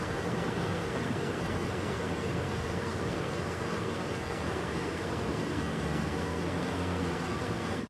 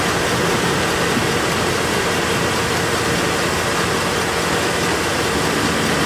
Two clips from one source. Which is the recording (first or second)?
second